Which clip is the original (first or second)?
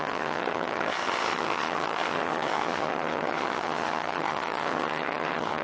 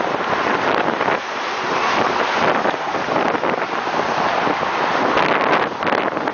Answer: second